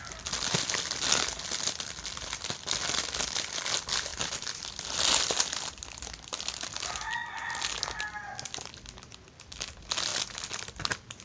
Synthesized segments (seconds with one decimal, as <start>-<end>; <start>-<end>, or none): 4.1-6.5; 10.1-11.2

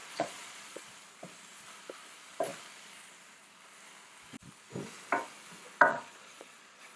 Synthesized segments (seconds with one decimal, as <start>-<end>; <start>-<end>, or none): 0.0-0.8; 5.9-7.0

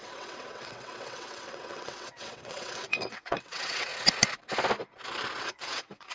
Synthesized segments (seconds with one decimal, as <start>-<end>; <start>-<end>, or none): 0.0-3.9; 5.4-6.1

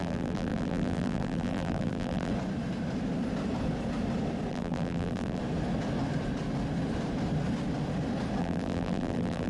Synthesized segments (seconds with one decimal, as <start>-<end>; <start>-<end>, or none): 0.0-2.3; 4.5-5.4; 8.4-9.5

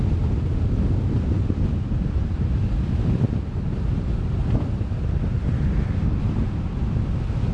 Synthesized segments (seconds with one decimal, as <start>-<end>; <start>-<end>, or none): 4.4-7.0

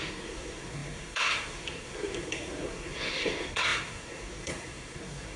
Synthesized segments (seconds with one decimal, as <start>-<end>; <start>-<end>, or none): 0.0-5.4

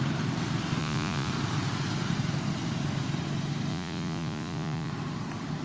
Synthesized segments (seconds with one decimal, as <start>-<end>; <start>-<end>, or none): 0.8-1.3; 3.7-4.9

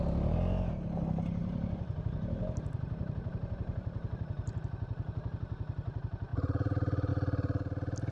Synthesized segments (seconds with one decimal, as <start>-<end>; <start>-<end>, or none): 1.4-4.6; 6.3-7.1